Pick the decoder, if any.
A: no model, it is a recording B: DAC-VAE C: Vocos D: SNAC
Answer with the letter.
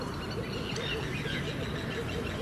A